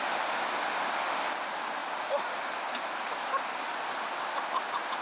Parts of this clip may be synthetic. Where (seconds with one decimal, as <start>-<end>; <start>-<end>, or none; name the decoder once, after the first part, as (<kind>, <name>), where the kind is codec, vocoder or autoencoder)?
none